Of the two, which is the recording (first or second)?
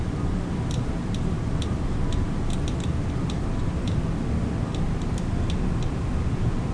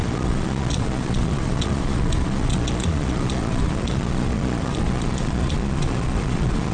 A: first